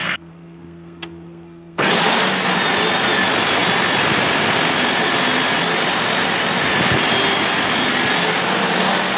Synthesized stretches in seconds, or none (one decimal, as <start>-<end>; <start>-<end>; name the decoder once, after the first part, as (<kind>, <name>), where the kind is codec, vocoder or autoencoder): 0.0-1.9 (codec, SNAC)